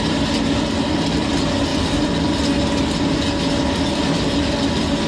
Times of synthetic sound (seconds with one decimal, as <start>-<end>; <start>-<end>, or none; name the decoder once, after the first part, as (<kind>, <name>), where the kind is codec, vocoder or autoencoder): none